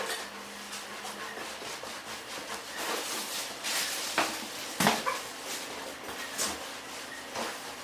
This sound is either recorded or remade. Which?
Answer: recorded